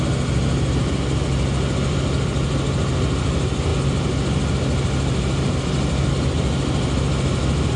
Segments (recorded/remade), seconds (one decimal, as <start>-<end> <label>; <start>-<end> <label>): 0.0-7.8 recorded